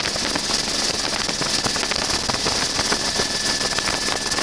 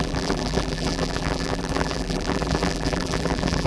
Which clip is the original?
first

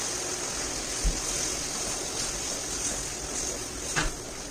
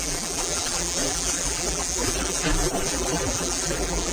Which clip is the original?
first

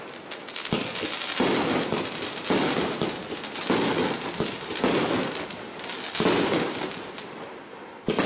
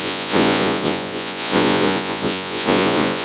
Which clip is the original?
first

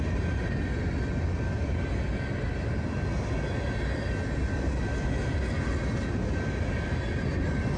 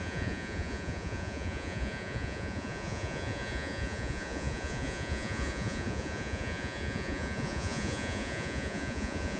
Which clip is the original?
first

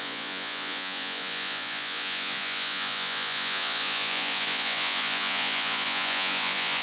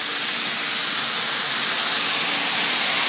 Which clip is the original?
second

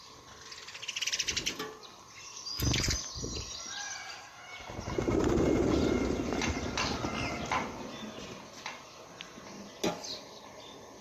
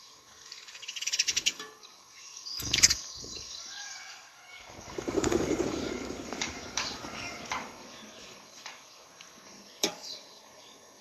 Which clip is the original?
first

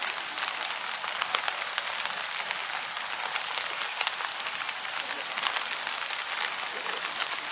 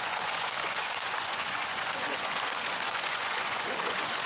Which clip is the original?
first